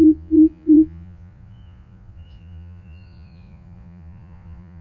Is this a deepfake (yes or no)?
yes